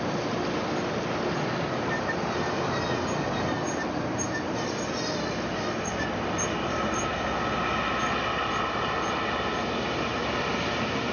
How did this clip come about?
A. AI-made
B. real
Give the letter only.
B